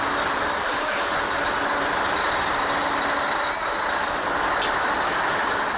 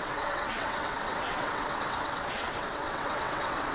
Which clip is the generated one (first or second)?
second